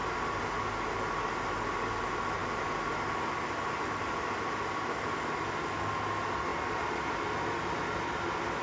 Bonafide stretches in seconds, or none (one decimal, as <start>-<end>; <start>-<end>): 0.0-6.5; 7.2-8.6